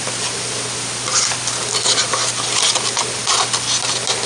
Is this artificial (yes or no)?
no